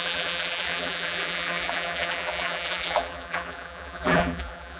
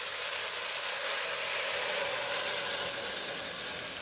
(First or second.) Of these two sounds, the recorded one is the second